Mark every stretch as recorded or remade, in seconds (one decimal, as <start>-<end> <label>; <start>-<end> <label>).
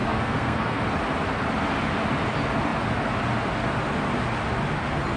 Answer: 0.0-0.8 remade; 0.8-5.2 recorded